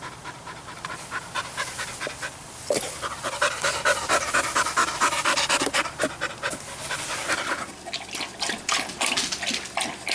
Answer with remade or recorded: recorded